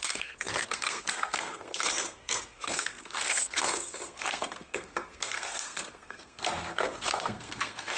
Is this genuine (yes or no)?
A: no